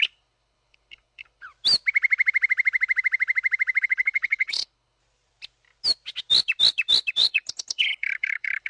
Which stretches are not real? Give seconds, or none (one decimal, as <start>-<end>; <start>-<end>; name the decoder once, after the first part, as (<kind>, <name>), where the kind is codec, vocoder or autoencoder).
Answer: 0.0-1.5 (codec, HILCodec); 3.8-5.0; 7.1-8.7